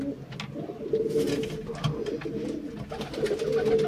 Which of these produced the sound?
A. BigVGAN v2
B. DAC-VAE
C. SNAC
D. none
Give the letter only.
D